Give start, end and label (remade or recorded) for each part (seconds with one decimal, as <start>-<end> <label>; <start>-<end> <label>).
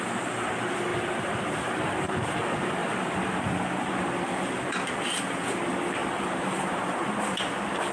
0.0-0.9 recorded; 0.9-2.4 remade; 2.4-6.0 recorded; 6.0-6.6 remade; 6.6-7.9 recorded